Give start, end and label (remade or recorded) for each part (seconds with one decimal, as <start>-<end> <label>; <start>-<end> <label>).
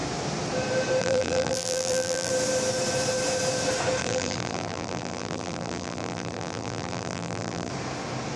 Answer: 0.0-1.0 recorded; 1.0-2.3 remade; 2.3-4.0 recorded; 4.0-7.7 remade; 7.7-8.4 recorded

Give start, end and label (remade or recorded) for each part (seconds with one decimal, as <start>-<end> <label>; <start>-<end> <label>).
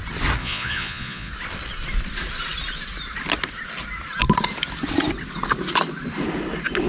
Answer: 0.0-0.4 recorded; 0.4-1.3 remade; 1.3-6.9 recorded